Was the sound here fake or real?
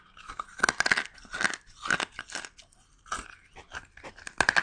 real